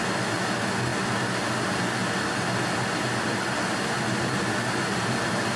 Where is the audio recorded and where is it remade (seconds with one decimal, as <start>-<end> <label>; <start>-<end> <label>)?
0.0-5.6 recorded